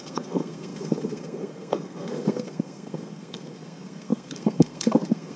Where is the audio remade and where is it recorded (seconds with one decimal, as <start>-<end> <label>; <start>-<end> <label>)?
0.0-5.4 remade